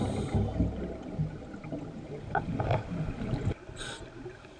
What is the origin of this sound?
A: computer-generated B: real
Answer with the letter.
B